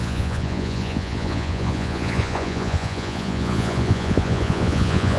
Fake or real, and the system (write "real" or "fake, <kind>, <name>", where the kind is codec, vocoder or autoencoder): fake, vocoder, Vocos